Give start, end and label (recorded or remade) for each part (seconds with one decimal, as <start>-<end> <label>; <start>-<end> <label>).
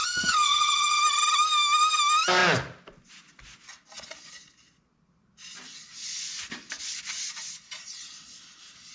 0.0-1.0 remade; 1.0-8.9 recorded